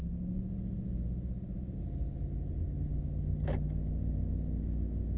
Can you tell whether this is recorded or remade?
recorded